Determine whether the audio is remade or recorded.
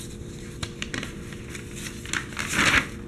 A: recorded